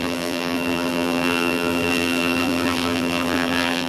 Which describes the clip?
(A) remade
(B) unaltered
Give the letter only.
A